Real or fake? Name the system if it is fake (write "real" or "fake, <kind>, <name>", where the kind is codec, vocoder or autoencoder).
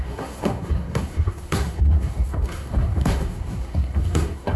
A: fake, codec, SNAC